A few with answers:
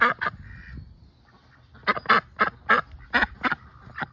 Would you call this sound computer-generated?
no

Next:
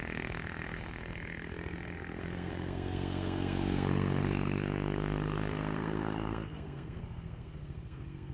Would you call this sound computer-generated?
yes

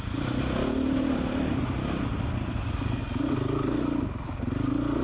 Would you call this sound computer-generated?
no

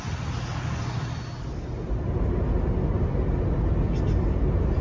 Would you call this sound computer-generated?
no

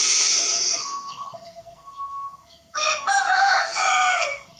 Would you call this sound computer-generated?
yes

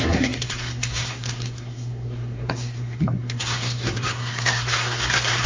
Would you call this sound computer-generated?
yes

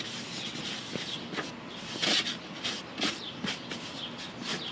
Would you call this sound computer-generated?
no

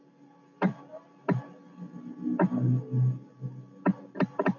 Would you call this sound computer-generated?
no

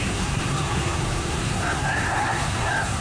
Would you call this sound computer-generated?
yes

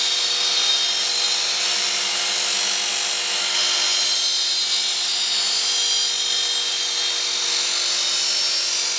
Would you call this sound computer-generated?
no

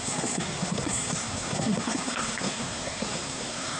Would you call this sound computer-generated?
yes